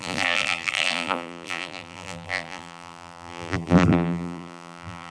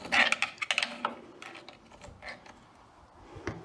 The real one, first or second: second